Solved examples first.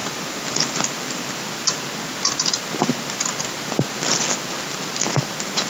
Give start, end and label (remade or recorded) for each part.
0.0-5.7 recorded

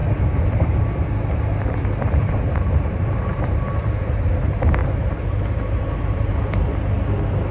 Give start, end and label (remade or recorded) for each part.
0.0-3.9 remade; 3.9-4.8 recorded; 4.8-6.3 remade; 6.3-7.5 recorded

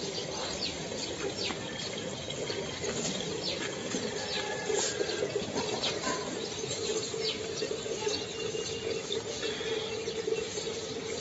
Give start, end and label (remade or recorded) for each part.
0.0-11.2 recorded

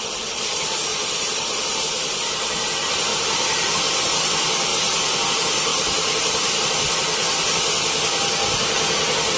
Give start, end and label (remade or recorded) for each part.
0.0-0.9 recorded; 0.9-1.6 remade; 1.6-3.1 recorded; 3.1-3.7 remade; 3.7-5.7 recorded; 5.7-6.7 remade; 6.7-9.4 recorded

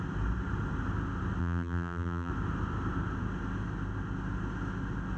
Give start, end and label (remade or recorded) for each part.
0.0-1.4 recorded; 1.4-2.3 remade; 2.3-5.2 recorded

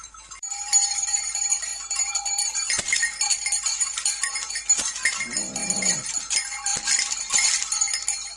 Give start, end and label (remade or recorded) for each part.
0.0-8.4 remade